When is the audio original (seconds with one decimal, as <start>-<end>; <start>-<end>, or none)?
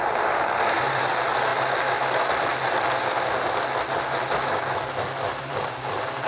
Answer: 1.5-5.3